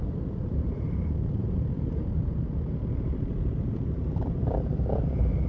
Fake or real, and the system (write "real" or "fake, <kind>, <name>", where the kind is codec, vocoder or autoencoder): fake, vocoder, BigVGAN v2